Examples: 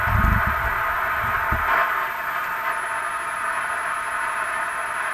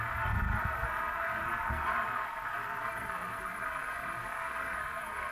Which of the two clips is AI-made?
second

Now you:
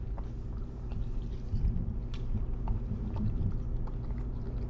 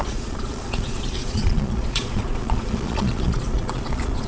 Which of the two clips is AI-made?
second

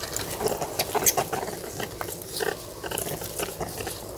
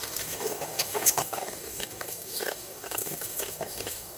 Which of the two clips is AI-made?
second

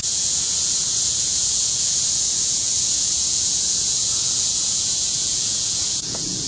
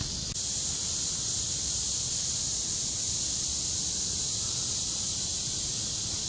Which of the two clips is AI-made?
first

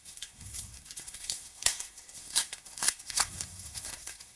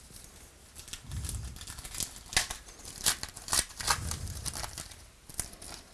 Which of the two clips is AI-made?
first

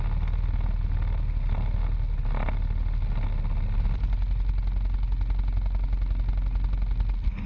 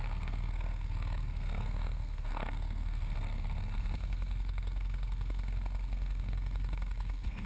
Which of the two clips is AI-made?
second